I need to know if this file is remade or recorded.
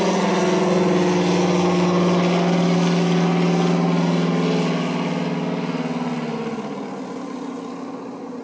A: recorded